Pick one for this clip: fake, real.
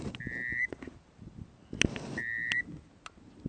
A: real